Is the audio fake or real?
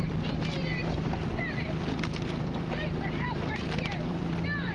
fake